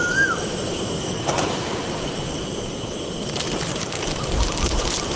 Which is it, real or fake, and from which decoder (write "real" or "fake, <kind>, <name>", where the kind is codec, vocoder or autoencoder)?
fake, vocoder, BigVGAN v2